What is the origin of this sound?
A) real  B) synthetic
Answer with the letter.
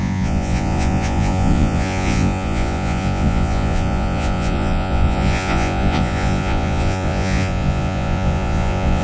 B